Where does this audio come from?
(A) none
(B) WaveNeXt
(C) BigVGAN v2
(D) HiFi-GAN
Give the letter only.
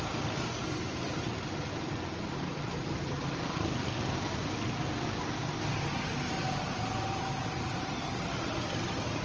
A